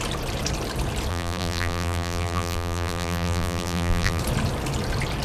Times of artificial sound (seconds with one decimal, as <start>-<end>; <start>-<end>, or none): 1.1-4.2